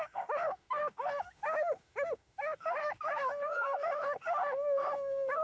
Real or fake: fake